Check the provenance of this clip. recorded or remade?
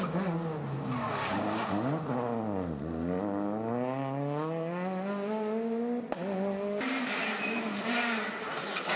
recorded